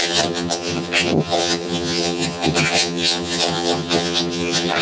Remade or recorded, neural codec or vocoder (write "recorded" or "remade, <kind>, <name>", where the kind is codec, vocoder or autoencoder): remade, vocoder, HiFi-GAN